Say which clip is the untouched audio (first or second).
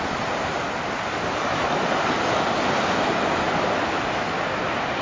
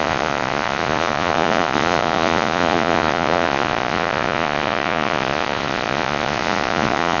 first